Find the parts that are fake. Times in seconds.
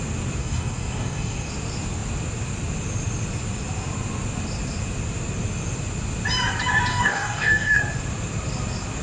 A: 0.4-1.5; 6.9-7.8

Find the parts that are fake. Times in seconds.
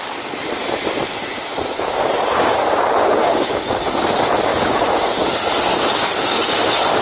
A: 3.2-4.0; 4.5-5.1; 5.7-6.6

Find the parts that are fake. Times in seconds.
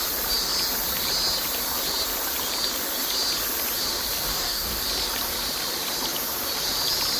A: 4.3-4.8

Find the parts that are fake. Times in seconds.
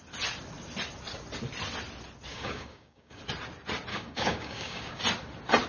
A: 2.3-3.2; 3.9-5.0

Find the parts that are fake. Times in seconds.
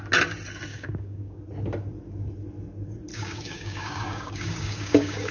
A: 0.7-1.4; 3.1-5.3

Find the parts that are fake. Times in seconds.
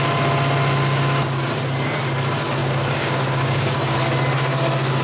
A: 2.6-4.0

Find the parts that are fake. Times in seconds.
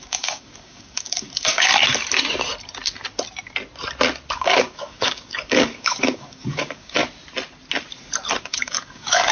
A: 0.0-1.7; 4.3-7.0; 8.4-9.3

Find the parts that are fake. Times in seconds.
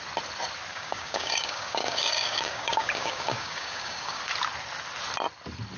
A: 0.7-4.2